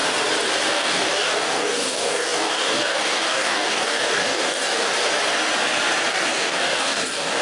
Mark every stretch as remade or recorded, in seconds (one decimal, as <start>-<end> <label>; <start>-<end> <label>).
0.0-0.7 recorded; 0.7-4.9 remade; 4.9-6.1 recorded; 6.1-7.4 remade